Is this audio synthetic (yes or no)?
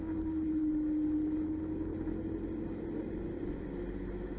no